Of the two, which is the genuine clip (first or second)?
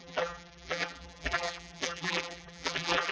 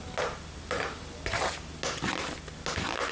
second